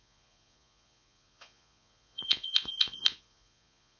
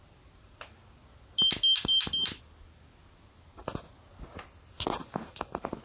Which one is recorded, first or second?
second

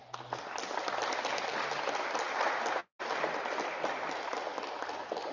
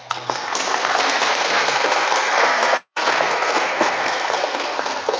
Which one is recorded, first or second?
first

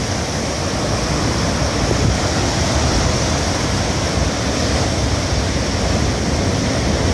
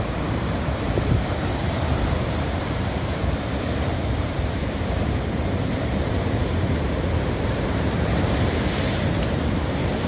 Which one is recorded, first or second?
first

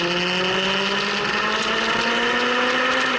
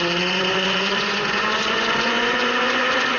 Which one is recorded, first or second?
first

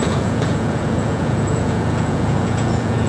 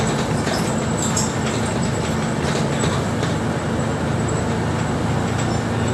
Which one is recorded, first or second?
second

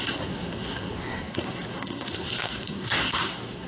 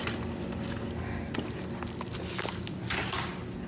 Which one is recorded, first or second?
second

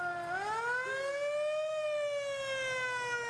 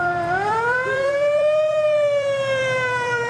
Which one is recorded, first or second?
first